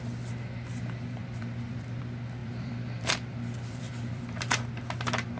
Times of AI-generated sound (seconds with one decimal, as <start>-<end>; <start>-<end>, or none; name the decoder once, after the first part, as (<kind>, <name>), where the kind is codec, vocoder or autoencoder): 1.2-2.0 (vocoder, BigVGAN v2); 2.4-4.5